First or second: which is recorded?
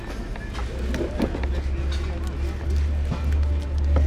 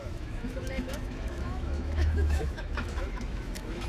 first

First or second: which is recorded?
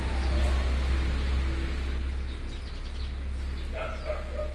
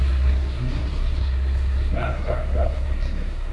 first